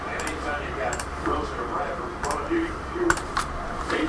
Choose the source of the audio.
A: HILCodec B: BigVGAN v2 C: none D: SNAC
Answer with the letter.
B